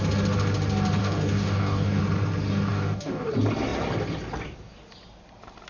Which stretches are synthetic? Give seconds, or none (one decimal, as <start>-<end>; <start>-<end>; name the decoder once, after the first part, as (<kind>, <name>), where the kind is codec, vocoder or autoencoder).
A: 1.0-2.0 (codec, DAC); 2.7-3.3